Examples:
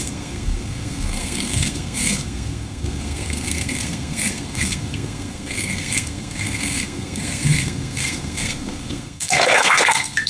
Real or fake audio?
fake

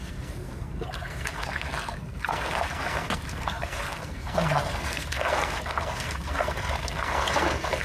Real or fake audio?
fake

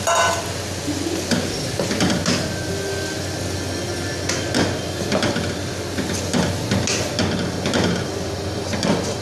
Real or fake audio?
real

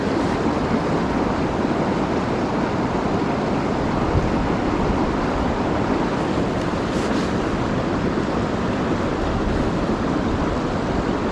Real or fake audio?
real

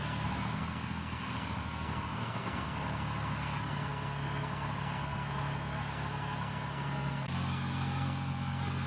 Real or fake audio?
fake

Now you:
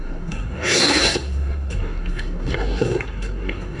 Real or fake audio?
fake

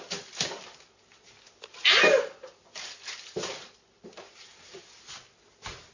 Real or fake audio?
real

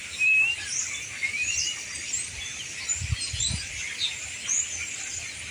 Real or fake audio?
real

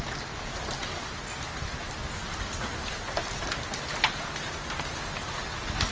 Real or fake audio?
real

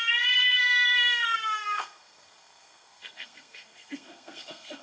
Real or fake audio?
fake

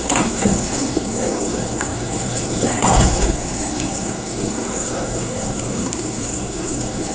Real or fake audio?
fake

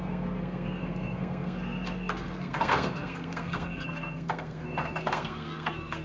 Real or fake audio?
fake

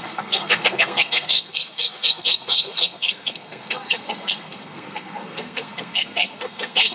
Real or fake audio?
fake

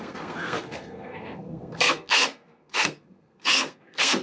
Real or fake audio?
fake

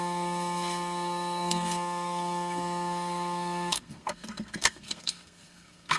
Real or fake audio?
fake